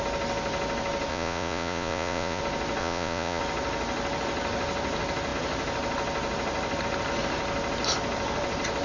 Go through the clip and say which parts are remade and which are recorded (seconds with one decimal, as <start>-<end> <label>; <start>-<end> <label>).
0.0-1.1 recorded; 1.1-2.4 remade; 2.4-2.8 recorded; 2.8-3.4 remade; 3.4-8.8 recorded